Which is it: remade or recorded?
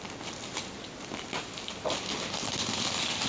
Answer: recorded